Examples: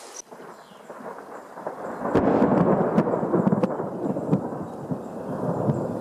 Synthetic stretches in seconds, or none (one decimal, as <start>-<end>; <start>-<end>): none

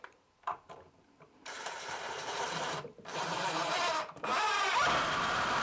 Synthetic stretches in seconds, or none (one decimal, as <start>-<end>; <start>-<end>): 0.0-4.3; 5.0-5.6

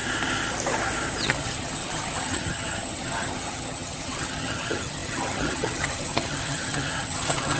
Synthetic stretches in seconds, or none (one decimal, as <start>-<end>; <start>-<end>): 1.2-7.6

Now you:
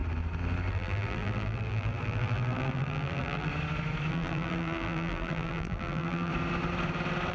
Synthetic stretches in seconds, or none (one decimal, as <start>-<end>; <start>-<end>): 0.7-3.5; 4.1-6.3

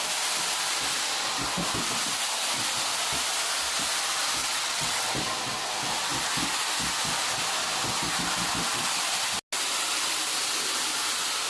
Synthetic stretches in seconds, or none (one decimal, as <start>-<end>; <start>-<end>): 4.4-5.1

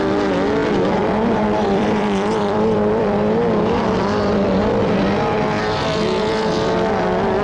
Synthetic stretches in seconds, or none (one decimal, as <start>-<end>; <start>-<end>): 0.6-5.0; 5.6-6.3